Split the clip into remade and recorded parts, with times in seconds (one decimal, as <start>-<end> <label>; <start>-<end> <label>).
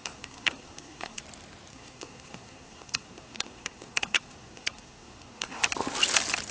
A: 0.0-1.2 remade; 1.2-1.7 recorded; 1.7-5.6 remade; 5.6-6.5 recorded